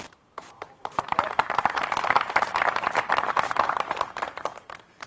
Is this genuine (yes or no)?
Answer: no